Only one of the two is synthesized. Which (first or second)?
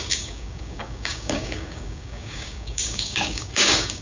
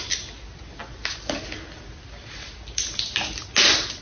first